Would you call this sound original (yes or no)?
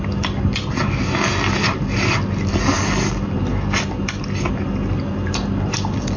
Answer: yes